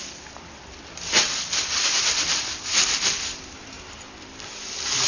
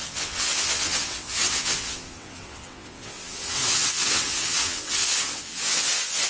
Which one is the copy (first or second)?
second